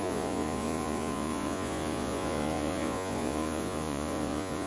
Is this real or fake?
fake